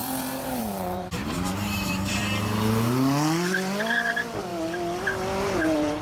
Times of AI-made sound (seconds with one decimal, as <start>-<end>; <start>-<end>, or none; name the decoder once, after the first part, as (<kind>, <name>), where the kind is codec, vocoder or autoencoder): 0.0-2.2 (vocoder, BigVGAN v2); 4.1-4.5; 5.4-6.0